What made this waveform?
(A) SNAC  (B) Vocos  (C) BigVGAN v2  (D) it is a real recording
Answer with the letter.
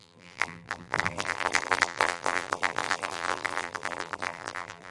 C